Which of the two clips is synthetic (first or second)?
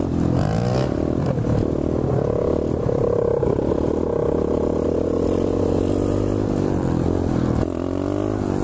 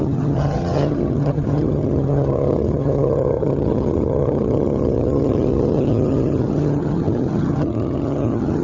second